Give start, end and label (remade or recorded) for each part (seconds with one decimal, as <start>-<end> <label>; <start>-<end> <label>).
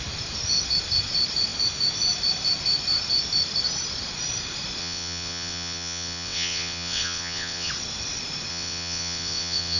0.0-4.8 recorded; 4.8-7.7 remade; 7.7-8.5 recorded; 8.5-9.8 remade